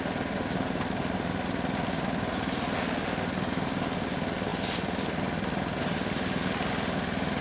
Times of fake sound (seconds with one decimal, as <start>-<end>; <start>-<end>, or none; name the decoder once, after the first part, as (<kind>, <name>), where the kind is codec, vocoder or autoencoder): none